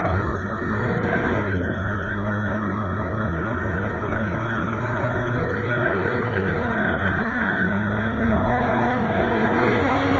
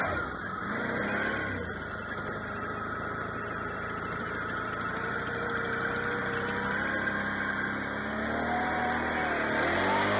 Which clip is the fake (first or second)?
first